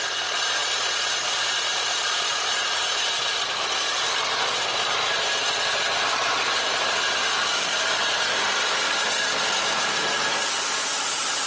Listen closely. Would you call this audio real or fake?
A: real